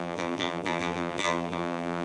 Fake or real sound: fake